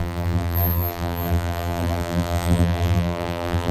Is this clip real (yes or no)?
no